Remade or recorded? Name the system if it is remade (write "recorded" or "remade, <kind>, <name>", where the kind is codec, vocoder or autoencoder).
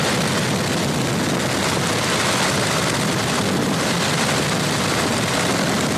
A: recorded